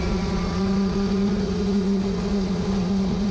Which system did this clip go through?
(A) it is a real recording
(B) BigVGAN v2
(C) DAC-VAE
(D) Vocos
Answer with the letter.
D